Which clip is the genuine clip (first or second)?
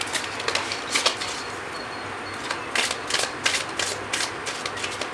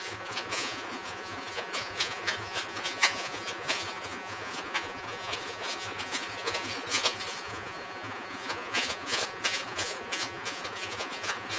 first